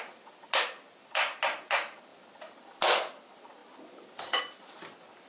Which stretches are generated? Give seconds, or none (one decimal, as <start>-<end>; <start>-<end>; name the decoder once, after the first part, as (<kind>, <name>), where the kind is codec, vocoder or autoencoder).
none